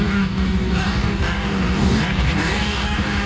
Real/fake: fake